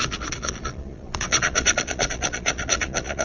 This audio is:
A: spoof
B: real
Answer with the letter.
A